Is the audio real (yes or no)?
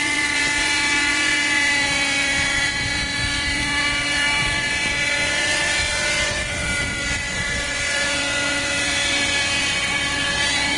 no